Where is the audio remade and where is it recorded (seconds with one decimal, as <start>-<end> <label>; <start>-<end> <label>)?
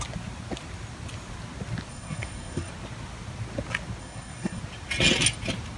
0.0-1.9 recorded; 1.9-2.7 remade; 2.7-4.0 recorded; 4.0-4.6 remade; 4.6-5.8 recorded